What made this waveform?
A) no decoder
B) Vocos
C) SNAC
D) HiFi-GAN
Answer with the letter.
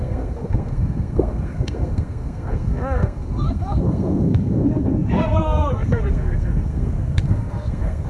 C